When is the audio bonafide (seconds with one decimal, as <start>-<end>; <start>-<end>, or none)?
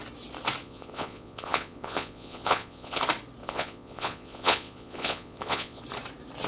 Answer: 0.0-0.6; 3.0-3.4; 5.8-6.5